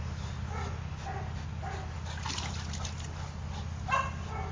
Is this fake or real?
real